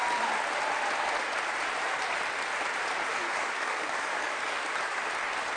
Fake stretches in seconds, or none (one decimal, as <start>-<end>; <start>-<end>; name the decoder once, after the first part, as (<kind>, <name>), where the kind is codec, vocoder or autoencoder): 3.1-5.1 (codec, DAC)